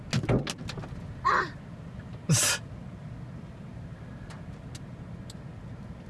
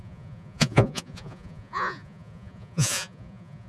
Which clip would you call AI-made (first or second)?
second